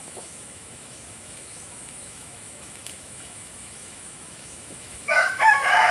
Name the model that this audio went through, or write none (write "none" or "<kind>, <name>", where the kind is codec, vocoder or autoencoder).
autoencoder, DAC-VAE